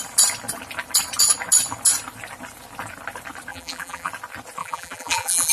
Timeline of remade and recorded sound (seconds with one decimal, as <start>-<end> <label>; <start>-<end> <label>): 0.0-3.5 recorded; 3.5-4.1 remade; 4.1-4.6 recorded; 4.6-5.5 remade